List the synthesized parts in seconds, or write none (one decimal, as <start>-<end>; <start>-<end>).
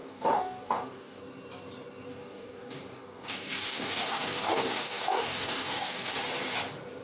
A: 0.0-1.2; 2.1-6.2